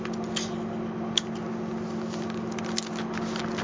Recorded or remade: recorded